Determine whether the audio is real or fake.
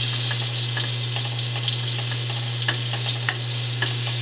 real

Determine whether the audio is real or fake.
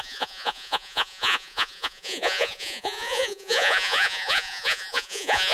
fake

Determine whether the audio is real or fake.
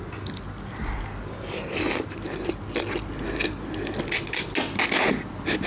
real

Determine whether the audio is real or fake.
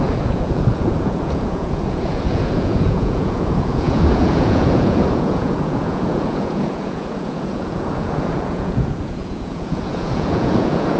fake